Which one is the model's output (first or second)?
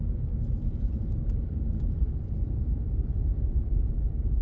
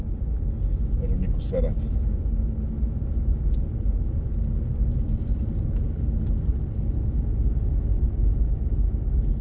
first